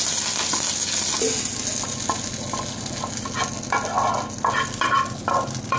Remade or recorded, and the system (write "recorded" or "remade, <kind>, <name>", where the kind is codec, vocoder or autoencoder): recorded